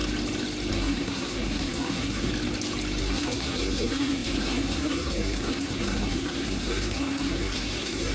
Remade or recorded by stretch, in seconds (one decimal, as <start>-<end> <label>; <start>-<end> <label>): 0.0-0.7 recorded; 0.7-2.3 remade; 2.3-3.0 recorded; 3.0-8.1 remade